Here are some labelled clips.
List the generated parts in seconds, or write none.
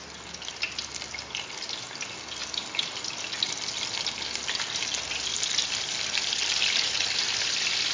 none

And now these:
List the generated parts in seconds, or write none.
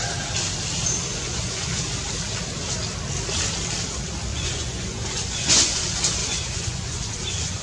1.1-1.7 (vocoder, Vocos); 4.3-5.8; 6.2-7.6